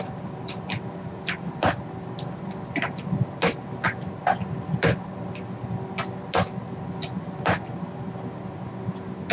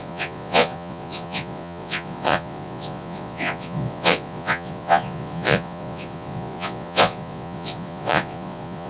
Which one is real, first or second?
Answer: first